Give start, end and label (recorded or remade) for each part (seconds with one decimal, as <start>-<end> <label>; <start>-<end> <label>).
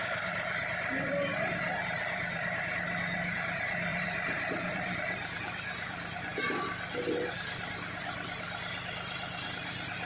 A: 0.0-1.3 recorded; 1.3-2.6 remade; 2.6-3.9 recorded; 3.9-6.6 remade; 6.6-10.1 recorded